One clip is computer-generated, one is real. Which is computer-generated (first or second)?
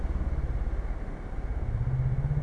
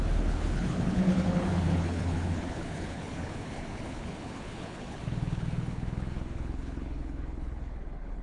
second